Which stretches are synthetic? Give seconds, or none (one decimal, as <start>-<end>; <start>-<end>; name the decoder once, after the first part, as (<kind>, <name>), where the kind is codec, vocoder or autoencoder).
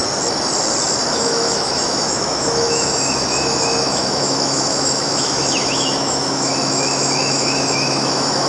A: 1.1-8.5 (autoencoder, DAC-VAE)